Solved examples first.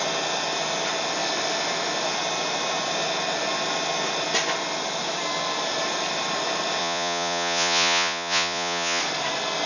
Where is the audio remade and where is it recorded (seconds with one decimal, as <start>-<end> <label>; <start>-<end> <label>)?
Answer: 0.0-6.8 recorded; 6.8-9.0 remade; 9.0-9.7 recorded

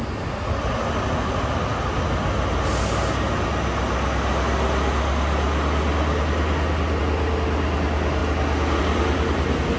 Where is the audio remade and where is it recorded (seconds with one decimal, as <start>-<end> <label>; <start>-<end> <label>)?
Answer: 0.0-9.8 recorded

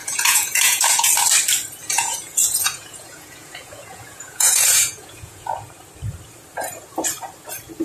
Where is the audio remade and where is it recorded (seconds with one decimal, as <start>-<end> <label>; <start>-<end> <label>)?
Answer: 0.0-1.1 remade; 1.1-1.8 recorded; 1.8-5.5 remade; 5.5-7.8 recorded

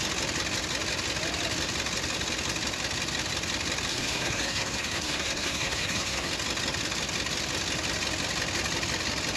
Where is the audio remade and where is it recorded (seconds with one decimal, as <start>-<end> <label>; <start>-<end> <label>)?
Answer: 0.0-3.9 recorded; 3.9-6.3 remade; 6.3-9.4 recorded

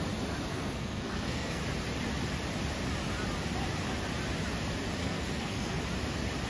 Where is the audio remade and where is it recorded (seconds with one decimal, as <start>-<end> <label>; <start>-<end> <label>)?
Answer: 0.0-0.5 recorded; 0.5-1.6 remade; 1.6-5.0 recorded; 5.0-5.8 remade; 5.8-6.5 recorded

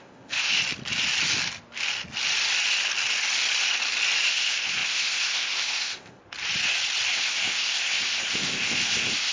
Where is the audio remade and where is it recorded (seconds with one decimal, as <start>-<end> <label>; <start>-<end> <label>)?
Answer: 0.0-0.6 remade; 0.6-4.3 recorded; 4.3-6.2 remade; 6.2-7.1 recorded; 7.1-9.3 remade

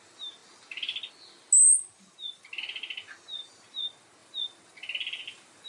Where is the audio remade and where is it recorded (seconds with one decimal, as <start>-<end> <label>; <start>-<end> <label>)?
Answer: 0.0-5.7 recorded